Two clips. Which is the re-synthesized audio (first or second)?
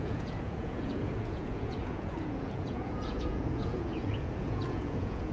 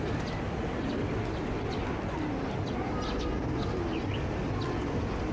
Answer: first